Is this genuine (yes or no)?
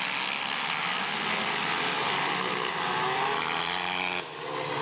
yes